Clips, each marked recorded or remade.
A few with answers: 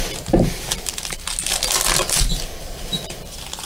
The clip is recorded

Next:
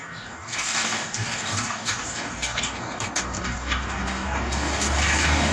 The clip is remade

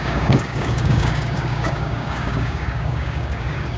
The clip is remade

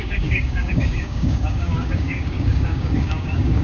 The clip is remade